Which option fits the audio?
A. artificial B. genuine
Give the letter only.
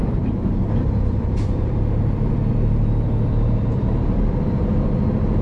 A